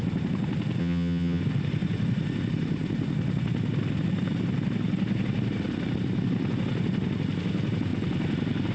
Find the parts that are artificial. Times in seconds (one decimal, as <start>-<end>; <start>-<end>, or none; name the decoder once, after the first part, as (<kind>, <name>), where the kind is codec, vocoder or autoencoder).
0.8-1.4 (vocoder, HiFi-GAN)